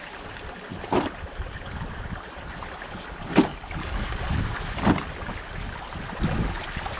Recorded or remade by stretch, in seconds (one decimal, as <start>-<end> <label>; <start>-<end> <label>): 0.0-3.5 recorded; 3.5-4.6 remade; 4.6-7.0 recorded